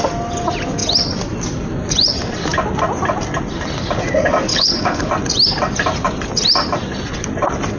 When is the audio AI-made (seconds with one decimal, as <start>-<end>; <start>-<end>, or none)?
4.5-5.1